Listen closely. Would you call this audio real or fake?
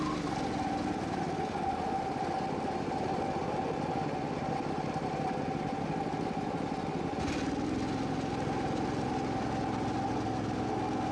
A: real